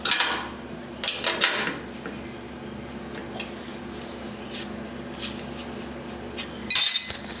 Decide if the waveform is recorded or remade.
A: recorded